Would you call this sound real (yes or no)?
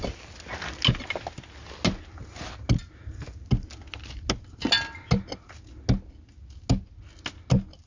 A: yes